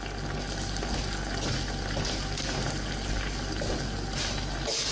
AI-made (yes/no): no